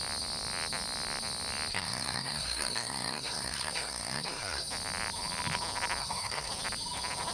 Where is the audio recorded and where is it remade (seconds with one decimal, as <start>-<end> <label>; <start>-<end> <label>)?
0.0-1.7 recorded; 1.7-4.7 remade; 4.7-6.0 recorded; 6.0-6.5 remade; 6.5-7.3 recorded